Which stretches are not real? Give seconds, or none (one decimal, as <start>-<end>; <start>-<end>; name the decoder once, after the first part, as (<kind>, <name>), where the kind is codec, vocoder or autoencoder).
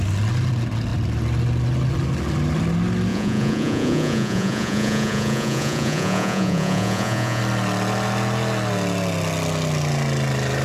3.1-7.4 (vocoder, Vocos)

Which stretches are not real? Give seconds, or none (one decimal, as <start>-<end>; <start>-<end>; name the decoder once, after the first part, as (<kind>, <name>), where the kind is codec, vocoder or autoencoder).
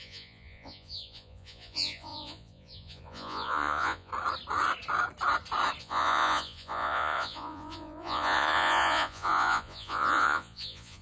0.0-4.1 (vocoder, Vocos); 5.8-11.0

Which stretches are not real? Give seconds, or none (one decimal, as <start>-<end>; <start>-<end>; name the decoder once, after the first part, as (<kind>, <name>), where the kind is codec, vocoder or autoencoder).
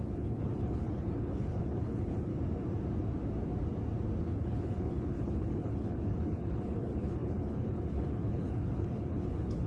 0.0-2.3 (codec, HILCodec); 4.2-9.7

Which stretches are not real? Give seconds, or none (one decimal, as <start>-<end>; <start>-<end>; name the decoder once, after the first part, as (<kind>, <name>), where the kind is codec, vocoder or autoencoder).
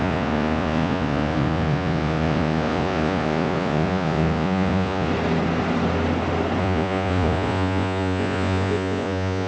0.0-5.1 (vocoder, Vocos); 6.6-9.5